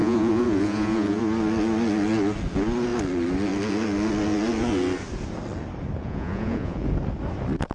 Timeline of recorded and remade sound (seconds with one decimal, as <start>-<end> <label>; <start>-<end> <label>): 0.0-1.2 remade; 1.2-6.0 recorded; 6.0-6.9 remade; 6.9-7.7 recorded